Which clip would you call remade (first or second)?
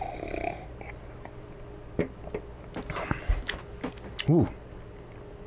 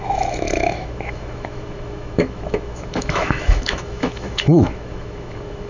second